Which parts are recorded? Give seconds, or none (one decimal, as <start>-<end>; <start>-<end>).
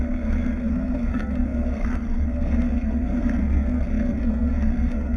none